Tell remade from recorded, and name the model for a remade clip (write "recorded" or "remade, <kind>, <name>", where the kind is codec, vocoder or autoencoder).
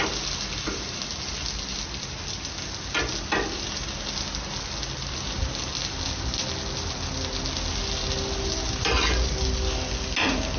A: recorded